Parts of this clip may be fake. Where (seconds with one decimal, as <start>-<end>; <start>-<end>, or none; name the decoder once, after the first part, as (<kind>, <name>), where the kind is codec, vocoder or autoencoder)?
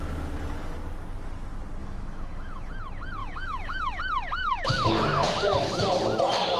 1.8-2.7 (autoencoder, DAC-VAE); 3.2-4.0; 4.4-5.8